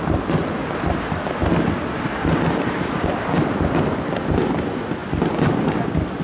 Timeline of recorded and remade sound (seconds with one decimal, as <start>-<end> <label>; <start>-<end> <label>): 0.0-6.2 recorded